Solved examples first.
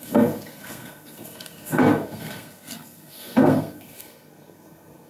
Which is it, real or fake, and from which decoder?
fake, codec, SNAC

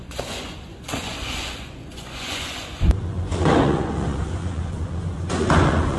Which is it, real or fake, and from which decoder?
fake, vocoder, Vocos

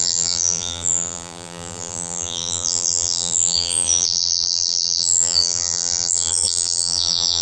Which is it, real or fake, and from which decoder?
fake, vocoder, BigVGAN v2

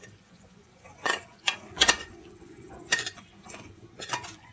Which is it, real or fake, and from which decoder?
fake, vocoder, Vocos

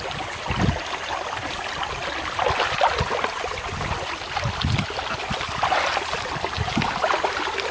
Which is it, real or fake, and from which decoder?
real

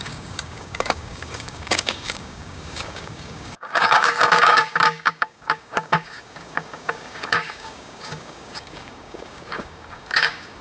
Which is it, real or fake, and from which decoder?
fake, codec, DAC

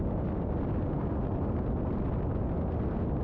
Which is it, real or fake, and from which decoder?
real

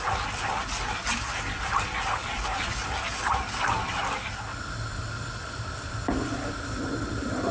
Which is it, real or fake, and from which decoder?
real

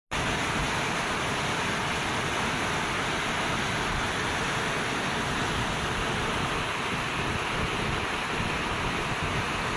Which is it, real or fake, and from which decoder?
real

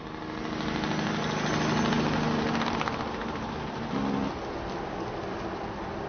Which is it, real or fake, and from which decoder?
real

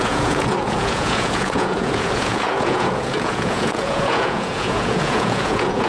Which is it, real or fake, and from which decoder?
fake, vocoder, Vocos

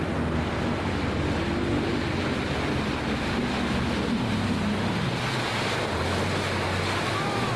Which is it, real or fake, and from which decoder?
real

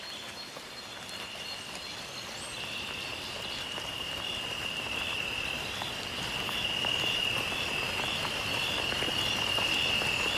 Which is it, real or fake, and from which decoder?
real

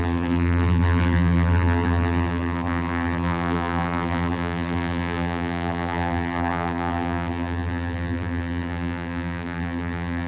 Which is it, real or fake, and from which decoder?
fake, vocoder, BigVGAN v2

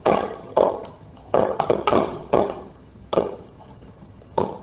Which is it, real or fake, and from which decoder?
fake, vocoder, HiFi-GAN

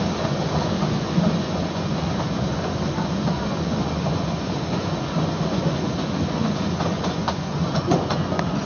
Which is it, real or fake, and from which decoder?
fake, vocoder, Vocos